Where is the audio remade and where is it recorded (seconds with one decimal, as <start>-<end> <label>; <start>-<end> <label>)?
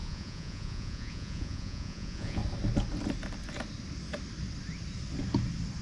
0.0-2.4 remade; 2.4-5.8 recorded